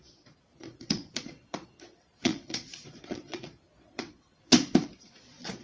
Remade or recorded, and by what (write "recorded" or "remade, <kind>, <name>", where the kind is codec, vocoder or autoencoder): remade, vocoder, Vocos